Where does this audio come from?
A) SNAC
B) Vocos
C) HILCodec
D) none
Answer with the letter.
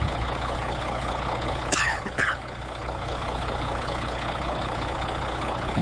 C